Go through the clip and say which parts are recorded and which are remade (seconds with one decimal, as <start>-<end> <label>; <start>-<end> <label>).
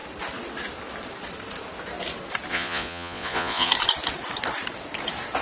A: 0.0-2.5 recorded; 2.5-3.7 remade; 3.7-5.4 recorded